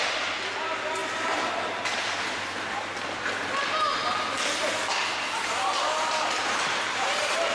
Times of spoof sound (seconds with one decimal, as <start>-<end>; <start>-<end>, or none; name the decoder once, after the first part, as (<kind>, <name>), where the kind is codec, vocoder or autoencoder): none